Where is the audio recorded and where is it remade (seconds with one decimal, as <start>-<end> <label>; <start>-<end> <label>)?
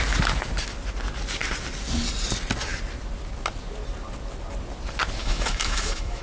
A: 0.0-5.2 recorded; 5.2-6.2 remade